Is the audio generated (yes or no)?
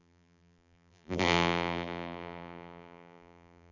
yes